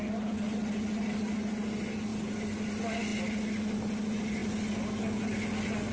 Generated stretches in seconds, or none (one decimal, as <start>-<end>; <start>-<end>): none

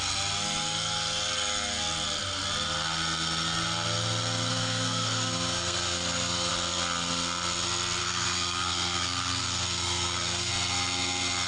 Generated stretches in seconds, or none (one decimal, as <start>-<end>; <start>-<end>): 4.5-6.5; 8.0-10.5